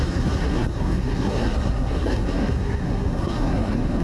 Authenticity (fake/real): fake